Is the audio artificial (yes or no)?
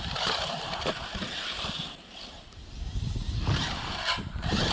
yes